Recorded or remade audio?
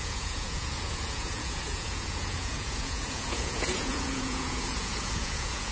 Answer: remade